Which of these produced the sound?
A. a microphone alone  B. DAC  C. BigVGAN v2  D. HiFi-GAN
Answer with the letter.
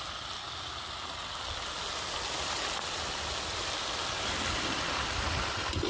A